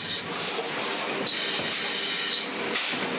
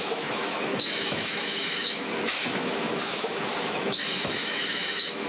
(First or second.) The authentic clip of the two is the first